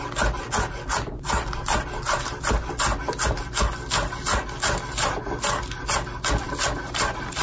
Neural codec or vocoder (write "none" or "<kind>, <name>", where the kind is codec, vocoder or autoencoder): none